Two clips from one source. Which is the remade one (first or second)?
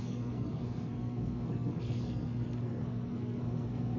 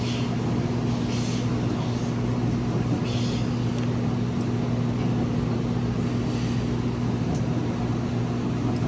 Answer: first